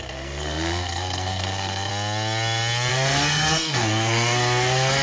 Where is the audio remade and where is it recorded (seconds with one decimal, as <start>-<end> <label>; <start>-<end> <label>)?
0.0-1.9 remade; 1.9-2.9 recorded; 2.9-5.0 remade